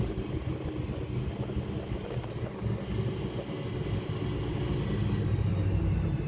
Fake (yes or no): no